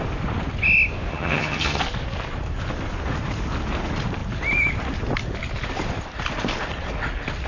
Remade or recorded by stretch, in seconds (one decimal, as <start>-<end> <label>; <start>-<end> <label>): 0.0-1.1 recorded; 1.1-1.8 remade; 1.8-7.5 recorded